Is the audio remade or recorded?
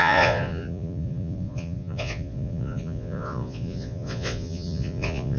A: remade